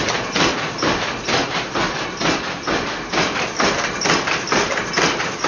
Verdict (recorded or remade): recorded